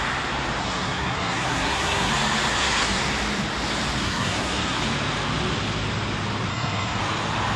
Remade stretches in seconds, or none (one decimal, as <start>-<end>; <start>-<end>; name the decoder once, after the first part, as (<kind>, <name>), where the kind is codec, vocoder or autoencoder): 0.6-2.1 (codec, SNAC); 2.5-3.0; 4.0-4.8; 6.5-7.0